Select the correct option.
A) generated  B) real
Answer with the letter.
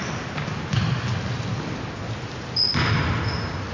B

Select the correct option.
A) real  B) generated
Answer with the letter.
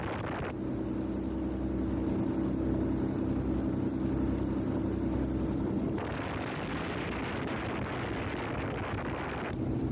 A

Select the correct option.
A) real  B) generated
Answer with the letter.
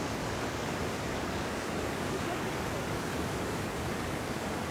B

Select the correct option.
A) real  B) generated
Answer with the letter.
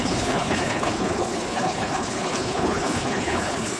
B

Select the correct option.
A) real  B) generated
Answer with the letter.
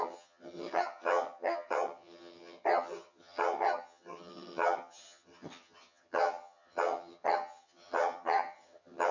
B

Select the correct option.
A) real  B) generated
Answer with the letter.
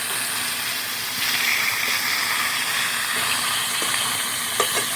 A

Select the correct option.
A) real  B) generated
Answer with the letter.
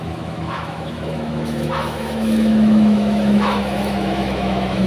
B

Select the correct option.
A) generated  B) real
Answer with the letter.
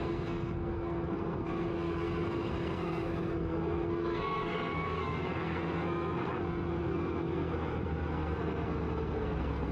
A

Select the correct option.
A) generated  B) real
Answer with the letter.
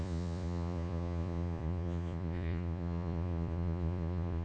A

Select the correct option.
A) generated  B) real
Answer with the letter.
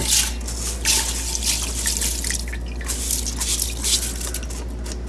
B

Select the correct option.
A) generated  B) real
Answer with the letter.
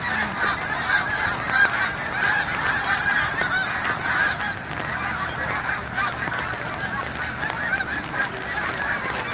B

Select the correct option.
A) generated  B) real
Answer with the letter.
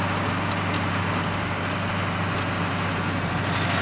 B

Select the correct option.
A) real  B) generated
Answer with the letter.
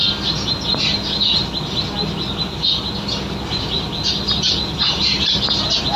A